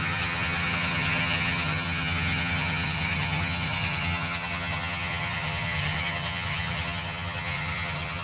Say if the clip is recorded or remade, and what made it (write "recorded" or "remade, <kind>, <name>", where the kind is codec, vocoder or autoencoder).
remade, vocoder, HiFi-GAN